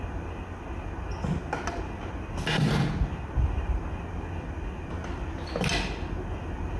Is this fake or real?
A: real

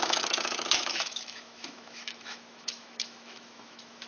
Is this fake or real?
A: fake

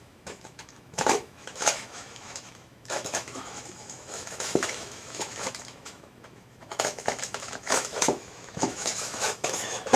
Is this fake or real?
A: fake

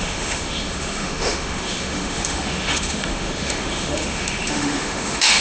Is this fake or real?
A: fake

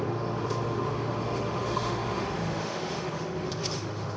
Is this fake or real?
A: fake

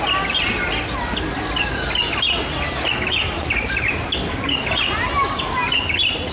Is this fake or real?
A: real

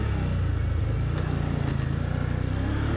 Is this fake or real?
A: real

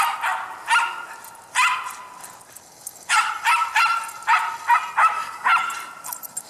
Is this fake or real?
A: real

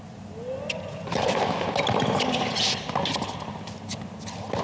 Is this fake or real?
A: real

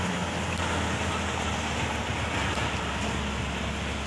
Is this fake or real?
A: real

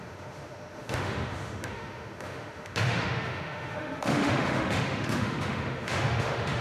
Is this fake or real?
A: fake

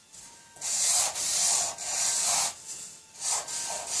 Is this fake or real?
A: real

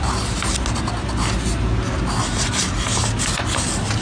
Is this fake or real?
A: real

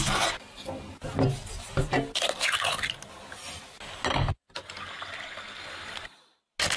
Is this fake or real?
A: real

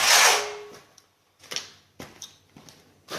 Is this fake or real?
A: real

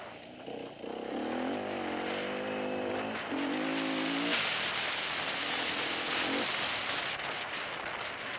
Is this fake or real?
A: real